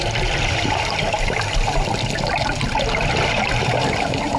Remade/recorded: recorded